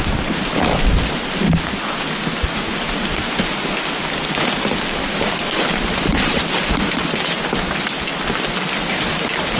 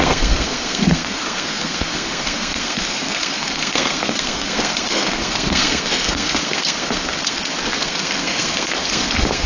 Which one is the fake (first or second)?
second